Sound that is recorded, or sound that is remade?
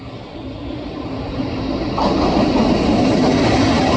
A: recorded